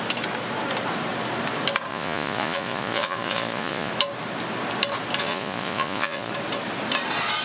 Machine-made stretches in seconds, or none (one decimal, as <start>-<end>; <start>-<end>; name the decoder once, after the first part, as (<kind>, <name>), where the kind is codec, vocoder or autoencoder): 1.9-3.9 (vocoder, Vocos); 5.2-6.3